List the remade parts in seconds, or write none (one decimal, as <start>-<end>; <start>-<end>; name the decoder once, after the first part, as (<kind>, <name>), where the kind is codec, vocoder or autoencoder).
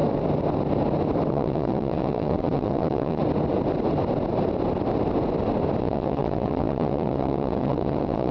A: 1.3-3.2 (vocoder, WaveNeXt); 5.8-8.3